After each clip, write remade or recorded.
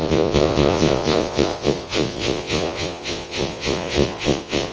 remade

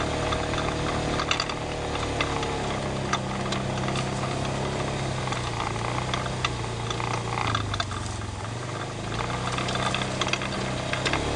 recorded